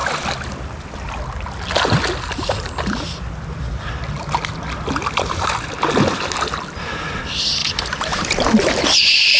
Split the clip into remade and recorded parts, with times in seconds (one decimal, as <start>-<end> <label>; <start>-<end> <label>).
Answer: 0.0-7.6 recorded; 7.6-9.4 remade